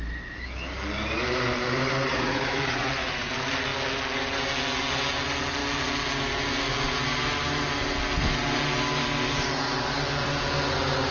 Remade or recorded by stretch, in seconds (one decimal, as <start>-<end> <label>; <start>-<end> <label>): 0.0-2.1 recorded; 2.1-3.3 remade; 3.3-11.1 recorded